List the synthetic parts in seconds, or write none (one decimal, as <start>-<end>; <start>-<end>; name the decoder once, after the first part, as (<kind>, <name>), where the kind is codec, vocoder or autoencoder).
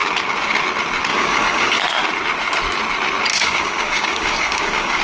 1.1-1.8 (codec, DAC); 3.3-5.0